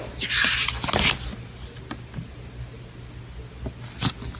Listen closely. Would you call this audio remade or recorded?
recorded